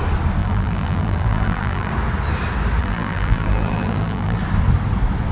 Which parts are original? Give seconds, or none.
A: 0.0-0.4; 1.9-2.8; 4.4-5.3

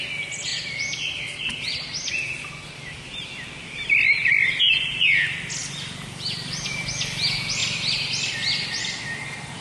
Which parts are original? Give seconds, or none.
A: 0.0-0.5; 2.1-5.6; 6.9-7.6; 8.3-9.6

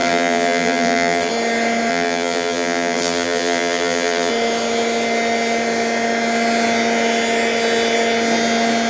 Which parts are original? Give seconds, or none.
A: 1.3-1.9; 4.3-8.9

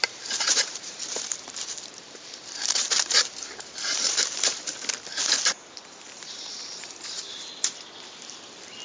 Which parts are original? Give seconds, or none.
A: 4.7-5.5; 7.5-8.8

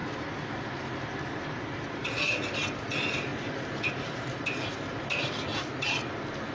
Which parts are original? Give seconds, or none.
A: 5.5-6.5